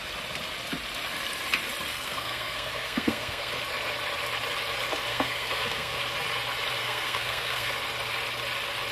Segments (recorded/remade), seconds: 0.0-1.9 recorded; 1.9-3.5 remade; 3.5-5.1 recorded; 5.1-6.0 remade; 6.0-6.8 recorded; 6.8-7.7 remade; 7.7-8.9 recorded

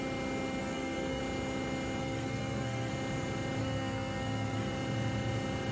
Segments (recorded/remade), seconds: 0.0-0.6 recorded; 0.6-1.2 remade; 1.2-2.0 recorded; 2.0-2.9 remade; 2.9-3.6 recorded; 3.6-4.7 remade; 4.7-5.7 recorded